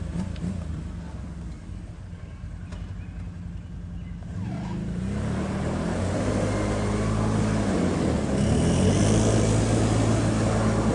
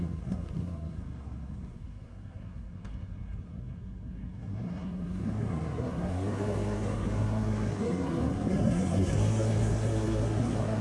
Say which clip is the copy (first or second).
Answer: second